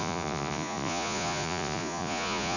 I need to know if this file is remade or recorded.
remade